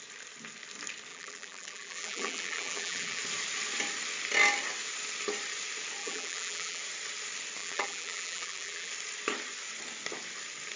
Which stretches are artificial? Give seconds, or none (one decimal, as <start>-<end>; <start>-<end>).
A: 1.1-3.2; 6.0-6.8; 7.6-8.9